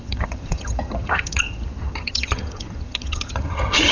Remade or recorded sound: remade